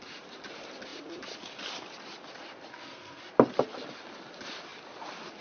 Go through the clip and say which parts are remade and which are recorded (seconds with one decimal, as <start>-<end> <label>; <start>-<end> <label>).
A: 0.0-2.7 recorded; 2.7-3.2 remade; 3.2-5.4 recorded